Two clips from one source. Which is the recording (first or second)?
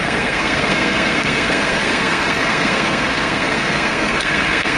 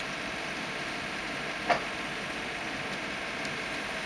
second